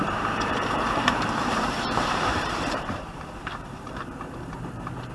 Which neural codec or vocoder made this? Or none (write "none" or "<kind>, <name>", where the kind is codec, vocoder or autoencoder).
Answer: vocoder, BigVGAN v2